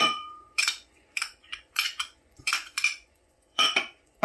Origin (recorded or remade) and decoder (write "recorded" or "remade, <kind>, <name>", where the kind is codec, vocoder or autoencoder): remade, vocoder, Vocos